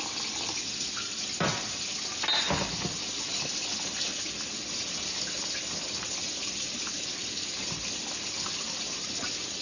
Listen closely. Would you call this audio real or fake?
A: real